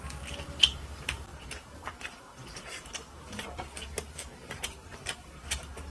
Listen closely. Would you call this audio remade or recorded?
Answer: remade